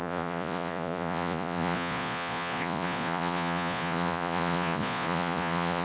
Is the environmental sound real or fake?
fake